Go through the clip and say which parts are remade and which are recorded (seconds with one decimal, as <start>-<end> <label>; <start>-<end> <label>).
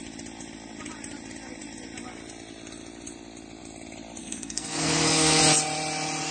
0.0-4.2 recorded; 4.2-5.4 remade; 5.4-6.3 recorded